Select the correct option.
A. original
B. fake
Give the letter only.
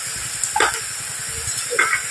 A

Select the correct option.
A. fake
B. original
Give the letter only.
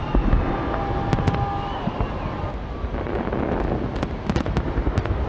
B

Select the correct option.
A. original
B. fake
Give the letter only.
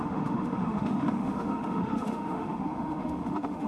B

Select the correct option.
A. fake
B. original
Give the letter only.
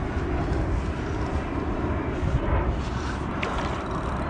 B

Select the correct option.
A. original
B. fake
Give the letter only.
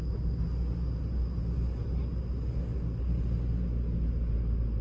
A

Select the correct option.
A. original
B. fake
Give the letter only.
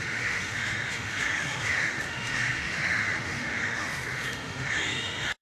B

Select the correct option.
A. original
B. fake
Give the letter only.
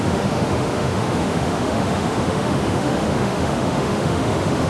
B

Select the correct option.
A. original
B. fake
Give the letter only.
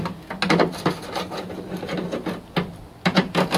A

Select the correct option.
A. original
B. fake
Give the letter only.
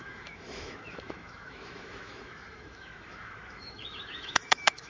B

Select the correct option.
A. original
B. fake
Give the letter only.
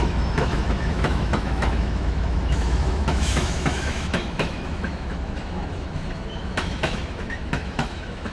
B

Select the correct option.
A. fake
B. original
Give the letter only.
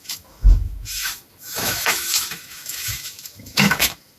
A